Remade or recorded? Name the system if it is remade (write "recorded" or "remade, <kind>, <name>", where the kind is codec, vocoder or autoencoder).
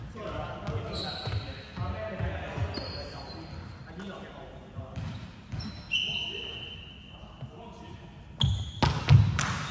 recorded